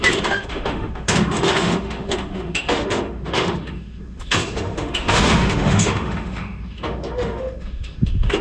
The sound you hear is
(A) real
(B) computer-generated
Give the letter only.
B